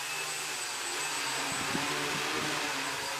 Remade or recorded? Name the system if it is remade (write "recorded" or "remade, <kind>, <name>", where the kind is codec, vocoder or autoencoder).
recorded